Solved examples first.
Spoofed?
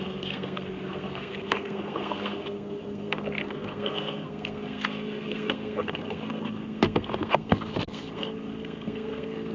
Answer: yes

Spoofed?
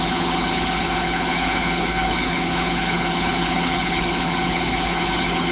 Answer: yes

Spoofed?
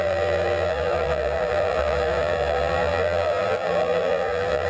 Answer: yes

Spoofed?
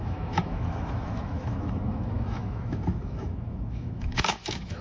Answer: yes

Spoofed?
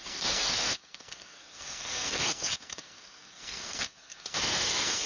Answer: yes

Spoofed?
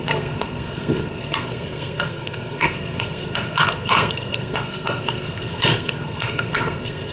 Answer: yes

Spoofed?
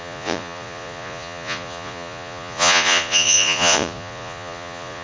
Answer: yes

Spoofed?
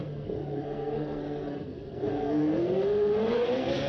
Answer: yes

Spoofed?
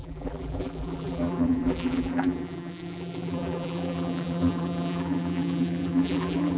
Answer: yes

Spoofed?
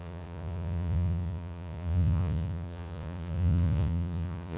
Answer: yes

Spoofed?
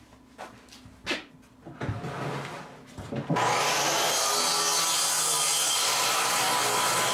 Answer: no